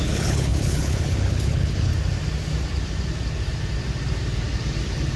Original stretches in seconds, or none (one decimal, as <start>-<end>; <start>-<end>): 1.9-5.2